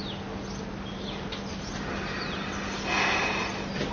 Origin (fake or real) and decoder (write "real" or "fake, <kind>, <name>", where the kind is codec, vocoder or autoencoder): real